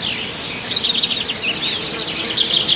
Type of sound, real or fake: real